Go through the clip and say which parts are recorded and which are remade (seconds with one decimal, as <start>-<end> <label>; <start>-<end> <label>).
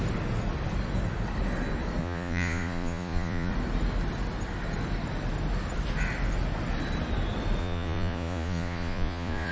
0.0-2.0 recorded; 2.0-3.5 remade; 3.5-7.6 recorded; 7.6-9.5 remade